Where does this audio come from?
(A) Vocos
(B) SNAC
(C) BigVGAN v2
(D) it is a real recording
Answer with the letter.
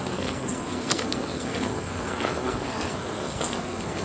B